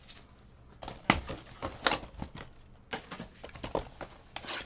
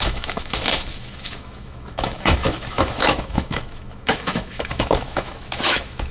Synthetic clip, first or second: second